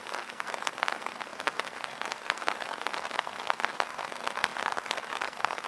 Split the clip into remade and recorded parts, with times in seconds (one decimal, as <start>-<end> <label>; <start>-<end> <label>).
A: 0.0-5.7 remade